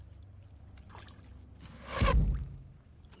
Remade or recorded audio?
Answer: recorded